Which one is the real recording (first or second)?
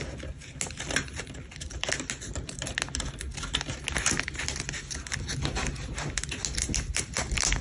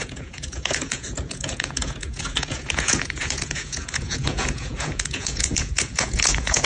first